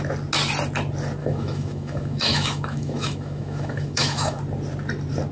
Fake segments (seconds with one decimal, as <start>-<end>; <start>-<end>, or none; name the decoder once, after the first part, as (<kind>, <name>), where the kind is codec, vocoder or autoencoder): 1.2-4.4 (autoencoder, DAC-VAE)